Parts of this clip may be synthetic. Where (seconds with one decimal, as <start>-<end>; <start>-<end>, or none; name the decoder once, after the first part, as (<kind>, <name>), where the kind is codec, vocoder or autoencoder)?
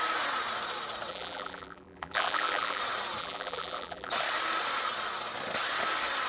1.1-2.8 (vocoder, BigVGAN v2); 3.2-4.1